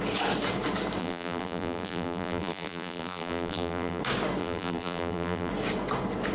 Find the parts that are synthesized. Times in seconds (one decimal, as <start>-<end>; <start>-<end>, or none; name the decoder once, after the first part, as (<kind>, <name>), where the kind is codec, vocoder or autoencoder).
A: 1.0-4.0 (vocoder, BigVGAN v2); 4.4-5.5

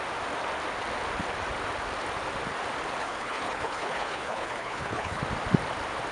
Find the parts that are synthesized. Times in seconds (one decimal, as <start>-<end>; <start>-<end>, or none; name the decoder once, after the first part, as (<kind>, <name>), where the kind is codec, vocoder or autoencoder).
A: 3.0-5.2 (codec, HILCodec)

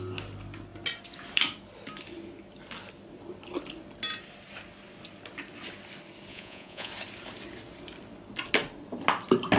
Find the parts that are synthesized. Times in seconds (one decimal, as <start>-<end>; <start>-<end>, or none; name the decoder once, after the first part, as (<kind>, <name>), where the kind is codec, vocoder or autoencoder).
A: 6.3-6.9 (vocoder, Vocos)